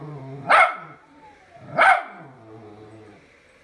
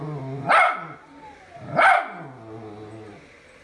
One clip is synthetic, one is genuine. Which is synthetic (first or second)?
first